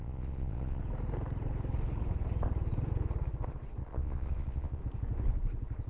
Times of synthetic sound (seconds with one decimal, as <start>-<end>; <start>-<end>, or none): 0.0-0.8; 3.8-4.8